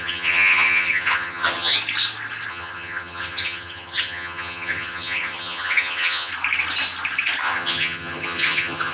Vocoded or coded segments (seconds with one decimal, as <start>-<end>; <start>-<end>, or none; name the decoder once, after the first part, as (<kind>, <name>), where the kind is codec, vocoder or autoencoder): 0.0-1.7 (vocoder, HiFi-GAN); 2.5-6.3; 7.4-8.9